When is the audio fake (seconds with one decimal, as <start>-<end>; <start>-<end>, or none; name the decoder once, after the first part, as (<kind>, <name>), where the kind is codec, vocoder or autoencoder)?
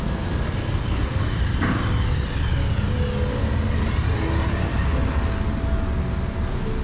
none